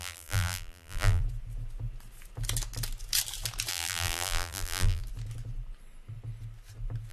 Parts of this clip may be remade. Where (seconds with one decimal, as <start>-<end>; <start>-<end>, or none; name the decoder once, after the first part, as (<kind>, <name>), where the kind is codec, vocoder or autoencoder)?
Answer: 0.0-1.2 (vocoder, BigVGAN v2); 3.7-5.0